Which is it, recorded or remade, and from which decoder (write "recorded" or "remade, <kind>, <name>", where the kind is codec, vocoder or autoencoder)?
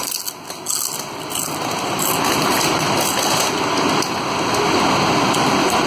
recorded